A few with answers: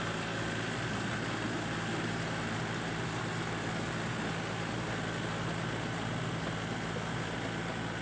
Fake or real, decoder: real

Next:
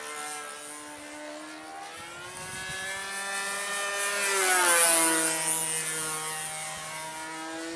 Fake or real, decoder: real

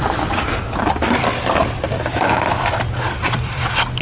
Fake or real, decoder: fake, vocoder, BigVGAN v2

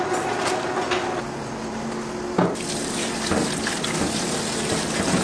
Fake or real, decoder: real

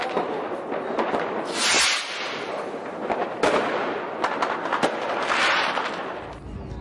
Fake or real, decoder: real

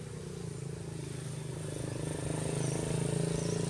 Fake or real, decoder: real